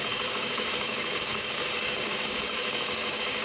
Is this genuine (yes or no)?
no